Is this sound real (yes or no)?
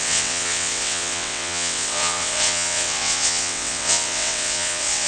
no